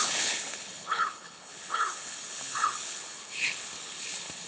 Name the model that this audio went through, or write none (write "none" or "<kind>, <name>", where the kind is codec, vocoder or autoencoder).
codec, HILCodec